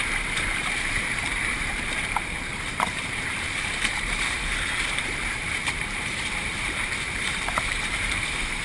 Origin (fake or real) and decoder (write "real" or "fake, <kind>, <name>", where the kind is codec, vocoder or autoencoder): fake, vocoder, BigVGAN v2